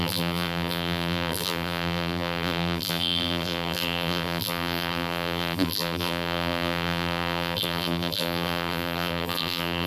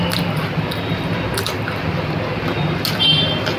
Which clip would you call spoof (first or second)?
first